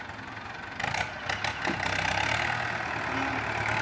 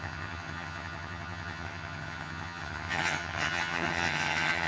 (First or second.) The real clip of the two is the first